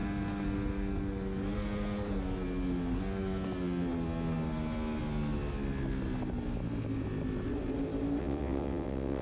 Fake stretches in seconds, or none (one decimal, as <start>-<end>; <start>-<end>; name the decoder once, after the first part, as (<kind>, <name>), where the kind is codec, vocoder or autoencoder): 8.2-9.2 (vocoder, WaveNeXt)